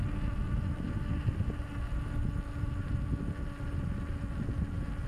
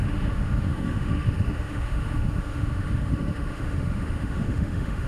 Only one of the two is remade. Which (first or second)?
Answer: second